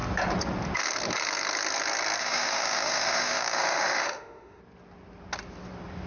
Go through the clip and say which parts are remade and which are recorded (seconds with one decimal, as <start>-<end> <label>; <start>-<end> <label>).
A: 0.0-2.2 recorded; 2.2-4.6 remade; 4.6-6.1 recorded